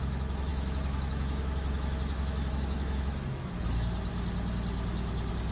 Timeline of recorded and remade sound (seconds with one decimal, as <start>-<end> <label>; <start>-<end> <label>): 0.0-4.1 remade; 4.1-5.5 recorded